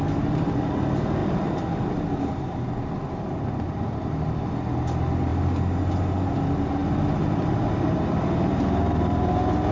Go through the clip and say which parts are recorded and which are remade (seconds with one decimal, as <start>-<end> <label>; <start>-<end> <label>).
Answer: 0.0-9.7 recorded